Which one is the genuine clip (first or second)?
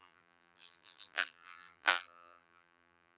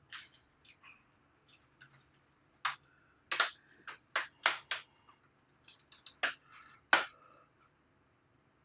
second